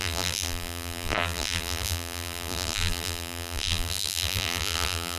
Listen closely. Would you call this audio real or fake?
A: fake